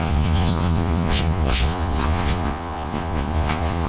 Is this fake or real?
fake